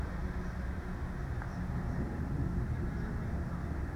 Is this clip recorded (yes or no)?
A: yes